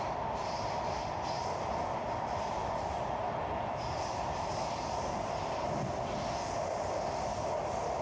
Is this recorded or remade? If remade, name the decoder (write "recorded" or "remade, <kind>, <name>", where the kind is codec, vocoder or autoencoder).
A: recorded